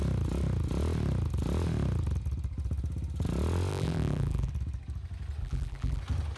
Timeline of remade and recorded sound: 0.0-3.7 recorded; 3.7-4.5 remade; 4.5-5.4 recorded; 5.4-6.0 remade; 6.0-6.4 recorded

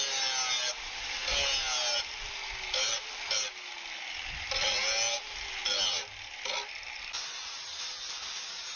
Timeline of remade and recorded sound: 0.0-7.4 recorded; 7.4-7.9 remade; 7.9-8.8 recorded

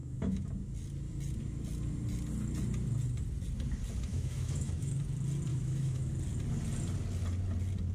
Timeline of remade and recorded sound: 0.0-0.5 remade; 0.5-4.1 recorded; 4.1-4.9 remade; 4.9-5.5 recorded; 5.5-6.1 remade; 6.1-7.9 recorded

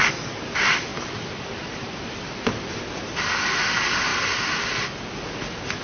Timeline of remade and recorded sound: 0.0-0.9 recorded; 0.9-2.7 remade; 2.7-4.1 recorded; 4.1-5.0 remade; 5.0-5.8 recorded

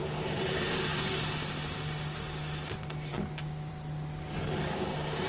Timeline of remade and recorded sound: 0.0-0.9 recorded; 0.9-2.2 remade; 2.2-5.3 recorded

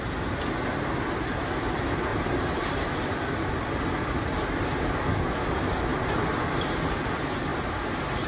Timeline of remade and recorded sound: 0.0-2.1 recorded; 2.1-3.5 remade; 3.5-5.9 recorded; 5.9-6.9 remade; 6.9-7.5 recorded; 7.5-8.3 remade